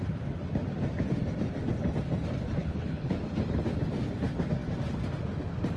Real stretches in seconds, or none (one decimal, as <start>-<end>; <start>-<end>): 0.0-2.6; 3.1-5.8